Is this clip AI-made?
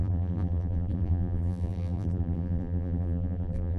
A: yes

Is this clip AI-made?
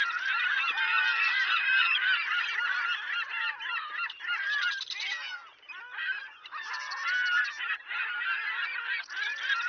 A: yes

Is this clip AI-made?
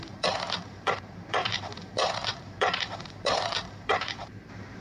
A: yes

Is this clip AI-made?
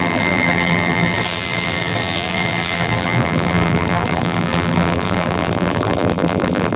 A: yes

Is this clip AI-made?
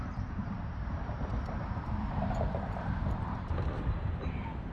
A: yes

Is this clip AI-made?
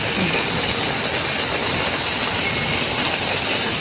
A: no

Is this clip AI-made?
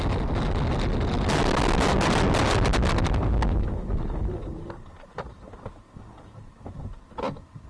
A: no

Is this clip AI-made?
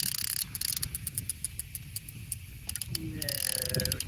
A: no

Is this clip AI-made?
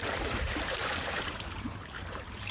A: yes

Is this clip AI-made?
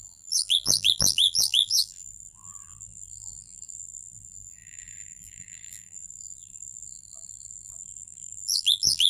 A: yes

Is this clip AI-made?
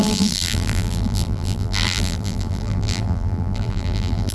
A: yes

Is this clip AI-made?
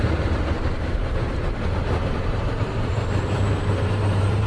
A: yes